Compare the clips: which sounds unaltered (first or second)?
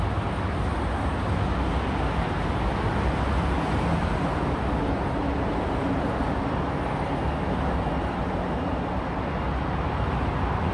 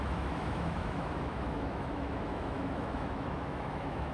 first